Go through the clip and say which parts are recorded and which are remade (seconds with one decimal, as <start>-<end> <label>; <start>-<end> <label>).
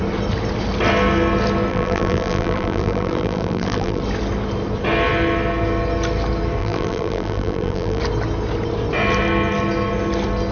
0.0-1.7 recorded; 1.7-4.0 remade; 4.0-6.6 recorded; 6.6-8.0 remade; 8.0-10.5 recorded